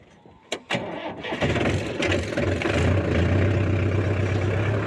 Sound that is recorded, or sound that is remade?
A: recorded